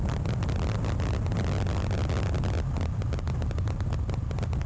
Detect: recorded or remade recorded